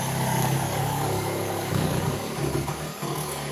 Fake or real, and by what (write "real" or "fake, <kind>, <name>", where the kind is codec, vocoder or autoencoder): fake, codec, DAC